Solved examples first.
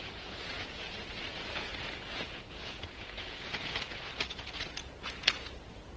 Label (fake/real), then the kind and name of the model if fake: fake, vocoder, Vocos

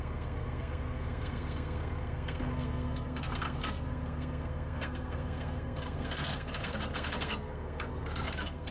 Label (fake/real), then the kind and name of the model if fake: fake, codec, SNAC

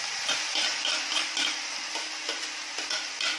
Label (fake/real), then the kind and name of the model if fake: real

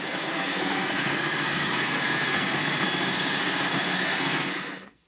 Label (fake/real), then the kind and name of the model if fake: fake, codec, SNAC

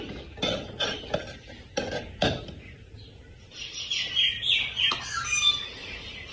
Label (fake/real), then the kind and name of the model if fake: real